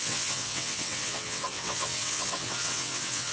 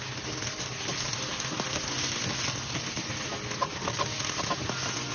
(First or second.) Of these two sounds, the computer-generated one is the first